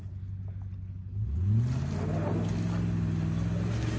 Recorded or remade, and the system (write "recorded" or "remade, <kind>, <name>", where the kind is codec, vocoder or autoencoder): recorded